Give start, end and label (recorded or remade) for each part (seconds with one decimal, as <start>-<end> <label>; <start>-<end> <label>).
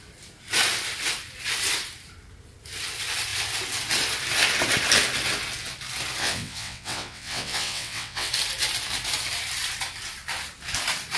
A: 0.0-6.2 recorded; 6.2-8.3 remade; 8.3-11.2 recorded